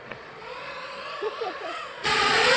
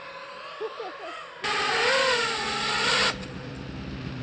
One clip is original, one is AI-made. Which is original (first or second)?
second